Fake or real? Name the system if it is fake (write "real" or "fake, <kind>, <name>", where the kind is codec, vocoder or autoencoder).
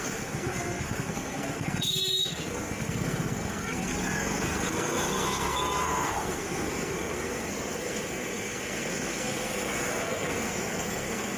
fake, codec, SNAC